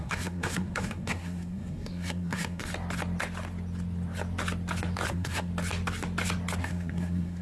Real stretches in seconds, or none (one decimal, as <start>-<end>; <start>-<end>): 2.7-5.1; 5.5-6.6

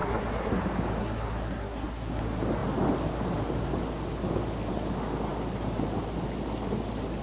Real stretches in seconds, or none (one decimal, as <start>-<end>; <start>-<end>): 0.6-1.0; 2.2-7.2

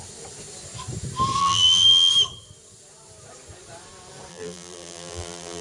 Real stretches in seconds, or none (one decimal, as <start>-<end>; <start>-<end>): 0.0-1.4; 2.1-4.3